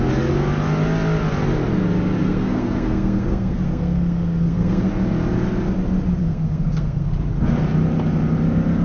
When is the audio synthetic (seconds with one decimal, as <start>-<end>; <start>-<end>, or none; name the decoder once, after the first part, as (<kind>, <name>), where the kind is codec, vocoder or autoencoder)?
2.2-4.9 (codec, SNAC); 6.2-7.1